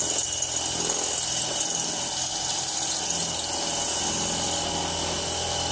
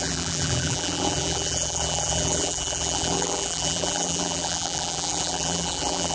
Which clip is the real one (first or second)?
first